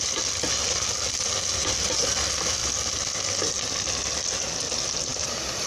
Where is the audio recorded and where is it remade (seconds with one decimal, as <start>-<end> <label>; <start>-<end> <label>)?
0.0-1.6 recorded; 1.6-2.2 remade; 2.2-5.7 recorded